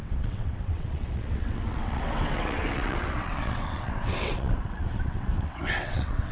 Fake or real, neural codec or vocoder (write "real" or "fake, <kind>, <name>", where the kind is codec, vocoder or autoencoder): fake, vocoder, WaveNeXt